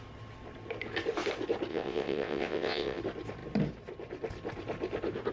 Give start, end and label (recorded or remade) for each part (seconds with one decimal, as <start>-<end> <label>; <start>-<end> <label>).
0.0-1.7 recorded; 1.7-3.0 remade; 3.0-5.3 recorded